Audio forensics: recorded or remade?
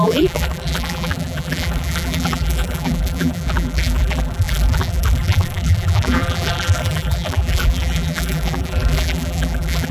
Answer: remade